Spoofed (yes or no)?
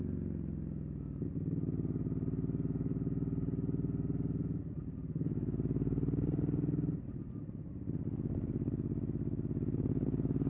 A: no